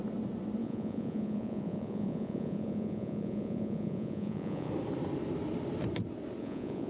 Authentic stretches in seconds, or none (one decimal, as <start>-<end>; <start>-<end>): 0.0-0.6; 4.7-6.4